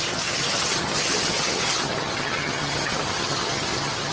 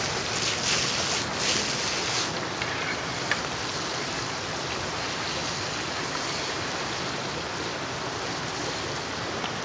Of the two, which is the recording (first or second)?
second